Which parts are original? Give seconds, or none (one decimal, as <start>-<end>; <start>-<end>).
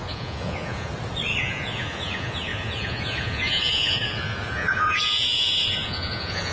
0.9-1.4